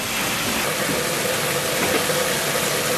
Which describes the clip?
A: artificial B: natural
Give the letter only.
B